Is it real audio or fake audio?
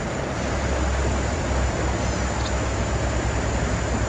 real